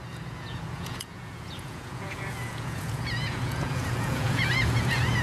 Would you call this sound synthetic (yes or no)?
yes